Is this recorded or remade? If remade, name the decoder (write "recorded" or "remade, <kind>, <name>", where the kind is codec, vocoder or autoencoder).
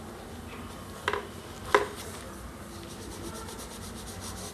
recorded